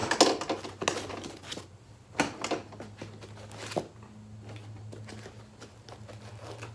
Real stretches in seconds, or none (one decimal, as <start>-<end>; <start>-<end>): 0.0-6.7